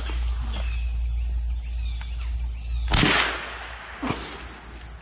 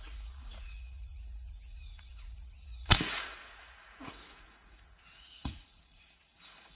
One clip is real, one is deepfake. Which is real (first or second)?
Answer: first